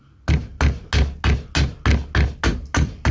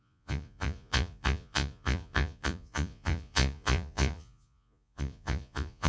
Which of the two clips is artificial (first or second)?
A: second